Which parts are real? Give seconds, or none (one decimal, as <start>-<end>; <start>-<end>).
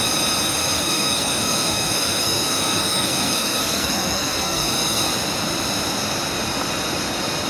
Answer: 0.0-0.6; 5.1-7.5